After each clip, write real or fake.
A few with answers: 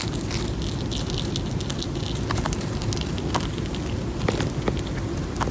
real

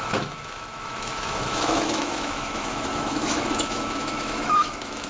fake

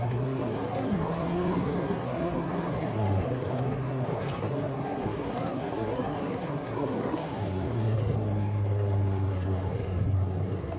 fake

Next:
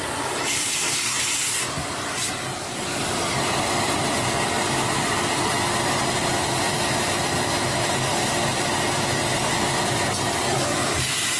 fake